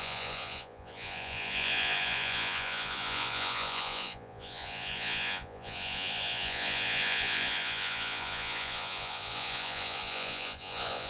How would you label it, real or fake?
fake